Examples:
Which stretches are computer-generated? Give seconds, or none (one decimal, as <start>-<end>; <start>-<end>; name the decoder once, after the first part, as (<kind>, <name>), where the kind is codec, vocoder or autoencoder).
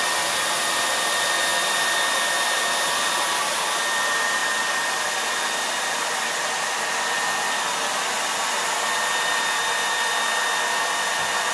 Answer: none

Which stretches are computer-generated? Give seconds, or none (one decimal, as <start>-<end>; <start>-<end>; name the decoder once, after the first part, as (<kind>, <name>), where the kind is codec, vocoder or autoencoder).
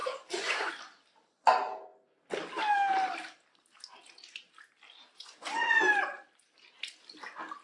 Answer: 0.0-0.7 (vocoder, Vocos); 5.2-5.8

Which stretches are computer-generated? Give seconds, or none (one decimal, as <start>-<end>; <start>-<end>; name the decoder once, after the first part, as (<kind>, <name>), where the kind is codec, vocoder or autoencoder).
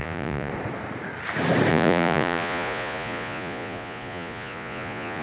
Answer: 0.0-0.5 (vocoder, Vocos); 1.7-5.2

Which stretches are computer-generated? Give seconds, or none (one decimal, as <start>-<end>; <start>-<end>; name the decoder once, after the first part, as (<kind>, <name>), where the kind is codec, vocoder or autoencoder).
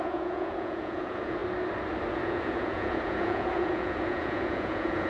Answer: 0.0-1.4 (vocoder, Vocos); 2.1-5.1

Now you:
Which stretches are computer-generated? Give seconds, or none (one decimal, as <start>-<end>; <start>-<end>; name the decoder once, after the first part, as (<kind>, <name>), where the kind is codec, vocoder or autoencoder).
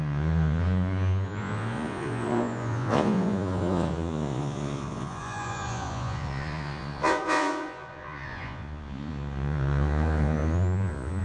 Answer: 0.0-11.2 (vocoder, Vocos)